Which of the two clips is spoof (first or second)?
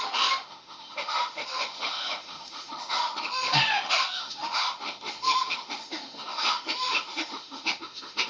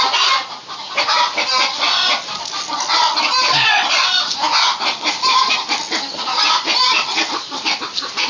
first